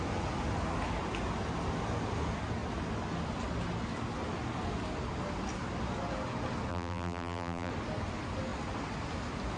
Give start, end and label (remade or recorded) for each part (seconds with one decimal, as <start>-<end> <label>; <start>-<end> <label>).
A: 0.0-6.7 recorded; 6.7-7.7 remade; 7.7-9.6 recorded